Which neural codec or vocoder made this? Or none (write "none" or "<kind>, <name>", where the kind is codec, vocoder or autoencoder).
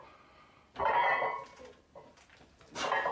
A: none